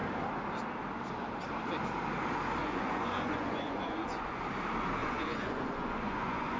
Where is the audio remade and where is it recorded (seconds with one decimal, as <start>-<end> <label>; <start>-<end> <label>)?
0.0-2.6 recorded; 2.6-4.4 remade; 4.4-5.0 recorded; 5.0-6.6 remade